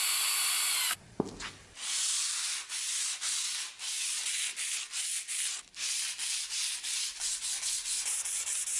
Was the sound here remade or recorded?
recorded